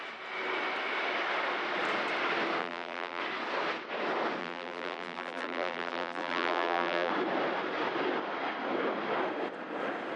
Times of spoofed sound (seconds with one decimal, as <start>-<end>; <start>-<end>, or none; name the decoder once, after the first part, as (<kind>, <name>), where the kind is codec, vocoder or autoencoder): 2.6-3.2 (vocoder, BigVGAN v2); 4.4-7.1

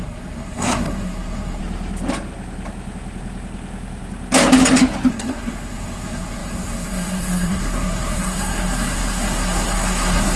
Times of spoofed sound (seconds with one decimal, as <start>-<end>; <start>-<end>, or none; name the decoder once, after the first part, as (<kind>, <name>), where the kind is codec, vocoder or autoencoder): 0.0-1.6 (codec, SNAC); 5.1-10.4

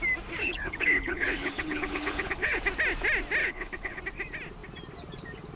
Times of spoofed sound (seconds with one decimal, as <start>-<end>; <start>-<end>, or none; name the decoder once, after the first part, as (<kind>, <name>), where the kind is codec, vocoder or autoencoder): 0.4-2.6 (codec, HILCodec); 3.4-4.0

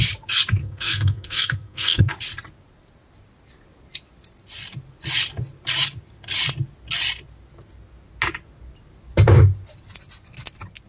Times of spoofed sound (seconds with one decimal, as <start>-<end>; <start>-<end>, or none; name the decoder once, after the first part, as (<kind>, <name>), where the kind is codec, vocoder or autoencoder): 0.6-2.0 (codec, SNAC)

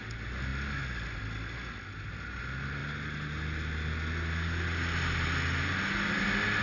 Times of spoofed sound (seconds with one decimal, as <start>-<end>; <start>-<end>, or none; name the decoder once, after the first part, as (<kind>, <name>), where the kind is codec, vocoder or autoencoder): none

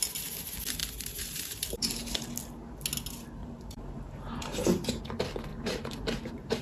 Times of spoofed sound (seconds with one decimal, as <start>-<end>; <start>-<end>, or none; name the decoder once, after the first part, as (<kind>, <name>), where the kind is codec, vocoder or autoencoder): 0.8-2.3 (vocoder, BigVGAN v2); 3.4-5.0; 5.5-6.6

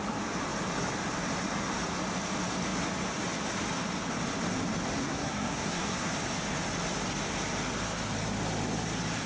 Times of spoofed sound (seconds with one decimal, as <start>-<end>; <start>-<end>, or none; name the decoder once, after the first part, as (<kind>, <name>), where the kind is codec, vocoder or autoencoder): 5.0-6.1 (codec, SNAC)

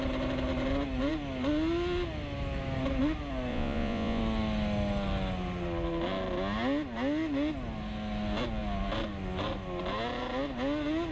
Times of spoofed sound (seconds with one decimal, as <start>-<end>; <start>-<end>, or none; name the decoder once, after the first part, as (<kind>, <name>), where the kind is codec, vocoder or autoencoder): 3.5-4.2 (vocoder, Vocos)